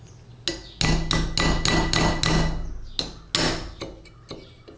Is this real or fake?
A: real